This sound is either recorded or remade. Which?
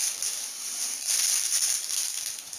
remade